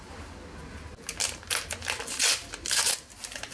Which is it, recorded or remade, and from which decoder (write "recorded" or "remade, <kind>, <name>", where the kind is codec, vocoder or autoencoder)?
recorded